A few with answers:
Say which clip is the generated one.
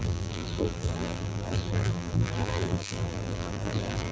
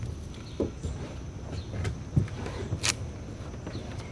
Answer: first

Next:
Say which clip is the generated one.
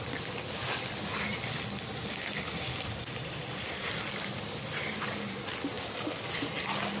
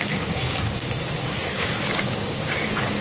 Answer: second